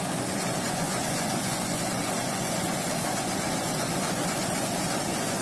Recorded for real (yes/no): no